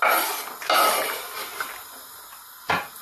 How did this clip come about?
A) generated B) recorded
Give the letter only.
B